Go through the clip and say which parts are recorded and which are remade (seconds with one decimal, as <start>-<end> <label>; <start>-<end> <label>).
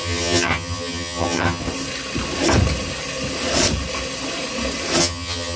0.0-1.6 remade; 1.6-5.0 recorded; 5.0-5.6 remade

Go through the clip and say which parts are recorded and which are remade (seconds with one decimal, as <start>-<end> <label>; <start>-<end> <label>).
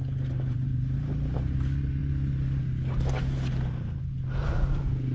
0.0-5.1 recorded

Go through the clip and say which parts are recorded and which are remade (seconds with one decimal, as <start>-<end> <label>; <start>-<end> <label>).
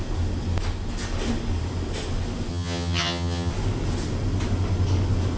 0.0-2.5 recorded; 2.5-3.5 remade; 3.5-5.4 recorded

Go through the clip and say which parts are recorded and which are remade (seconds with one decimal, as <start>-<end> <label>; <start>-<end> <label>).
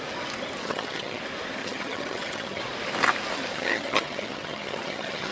0.0-0.6 recorded; 0.6-1.2 remade; 1.2-1.6 recorded; 1.6-2.6 remade; 2.6-3.5 recorded; 3.5-5.3 remade